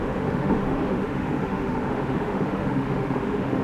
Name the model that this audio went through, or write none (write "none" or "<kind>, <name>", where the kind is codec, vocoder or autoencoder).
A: autoencoder, DAC-VAE